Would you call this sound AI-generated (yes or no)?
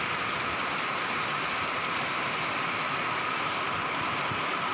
no